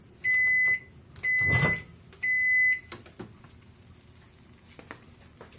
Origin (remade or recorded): recorded